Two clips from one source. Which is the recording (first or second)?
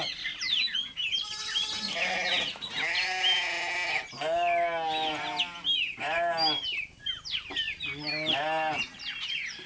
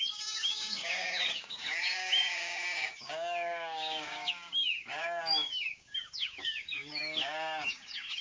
first